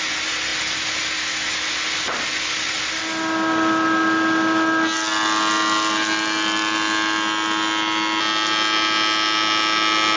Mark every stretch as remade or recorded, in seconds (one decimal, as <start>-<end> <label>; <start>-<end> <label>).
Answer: 0.0-10.2 recorded